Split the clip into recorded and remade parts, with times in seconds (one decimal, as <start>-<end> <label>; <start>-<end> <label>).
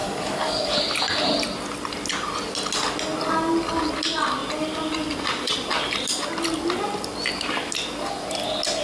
0.0-0.7 remade; 0.7-8.8 recorded